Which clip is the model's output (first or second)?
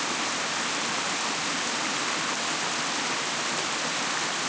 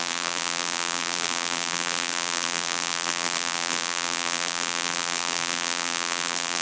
second